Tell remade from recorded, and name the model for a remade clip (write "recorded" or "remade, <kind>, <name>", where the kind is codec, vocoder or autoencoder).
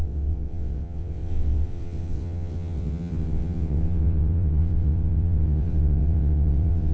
remade, vocoder, WaveNeXt